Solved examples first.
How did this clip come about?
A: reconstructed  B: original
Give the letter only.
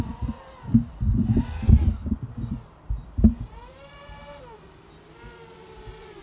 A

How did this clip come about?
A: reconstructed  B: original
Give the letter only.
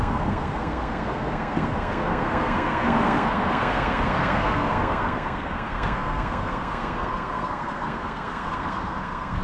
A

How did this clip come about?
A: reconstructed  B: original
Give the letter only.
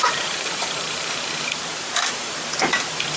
A